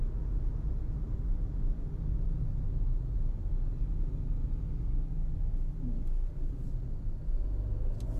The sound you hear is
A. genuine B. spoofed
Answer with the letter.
A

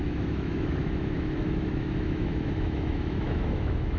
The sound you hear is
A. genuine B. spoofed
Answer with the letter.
B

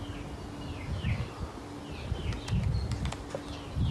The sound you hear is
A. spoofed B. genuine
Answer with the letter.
B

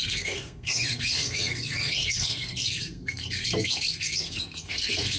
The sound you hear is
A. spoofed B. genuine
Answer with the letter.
A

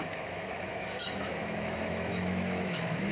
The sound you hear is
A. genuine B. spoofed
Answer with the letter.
B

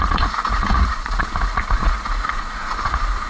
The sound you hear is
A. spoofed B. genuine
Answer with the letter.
A